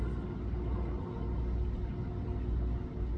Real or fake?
real